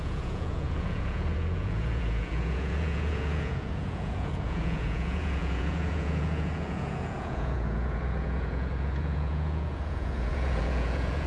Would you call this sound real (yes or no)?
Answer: no